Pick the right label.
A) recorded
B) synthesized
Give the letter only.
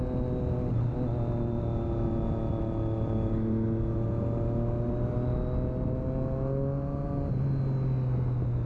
A